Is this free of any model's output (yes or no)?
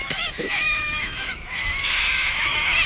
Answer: no